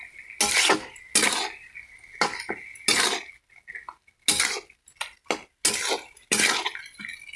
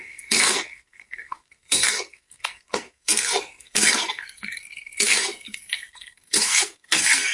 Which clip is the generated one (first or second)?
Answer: second